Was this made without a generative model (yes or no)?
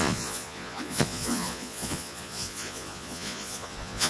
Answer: no